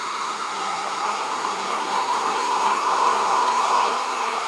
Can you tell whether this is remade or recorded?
remade